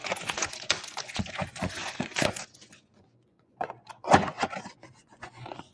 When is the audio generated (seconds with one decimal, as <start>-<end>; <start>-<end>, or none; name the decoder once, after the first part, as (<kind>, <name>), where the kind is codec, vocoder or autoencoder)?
0.0-5.7 (vocoder, Vocos)